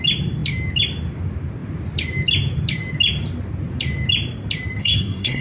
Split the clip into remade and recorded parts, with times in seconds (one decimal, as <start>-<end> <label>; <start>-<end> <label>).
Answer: 0.0-4.8 recorded; 4.8-5.4 remade